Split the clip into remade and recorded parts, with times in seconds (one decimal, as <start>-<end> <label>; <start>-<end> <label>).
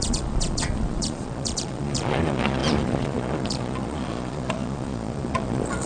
0.0-5.9 remade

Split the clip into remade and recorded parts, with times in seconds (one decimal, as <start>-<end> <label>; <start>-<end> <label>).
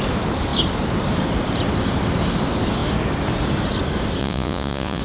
0.0-4.2 recorded; 4.2-5.0 remade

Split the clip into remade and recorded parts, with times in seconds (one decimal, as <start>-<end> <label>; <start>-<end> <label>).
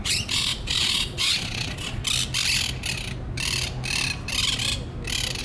0.0-2.0 remade; 2.0-5.4 recorded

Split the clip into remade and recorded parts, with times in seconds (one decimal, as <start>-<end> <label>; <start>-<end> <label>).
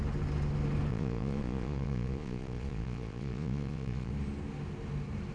0.0-0.9 recorded; 0.9-4.1 remade; 4.1-5.3 recorded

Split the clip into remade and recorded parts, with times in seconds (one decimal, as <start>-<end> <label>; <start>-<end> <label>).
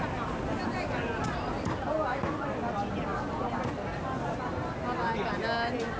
0.0-6.0 recorded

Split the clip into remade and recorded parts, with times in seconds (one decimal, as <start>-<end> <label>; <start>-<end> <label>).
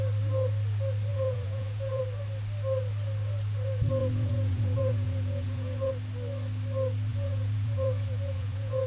0.0-1.1 recorded; 1.1-2.0 remade; 2.0-4.0 recorded; 4.0-5.9 remade; 5.9-7.1 recorded; 7.1-8.9 remade